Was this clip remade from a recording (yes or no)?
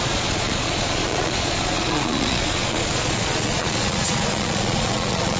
yes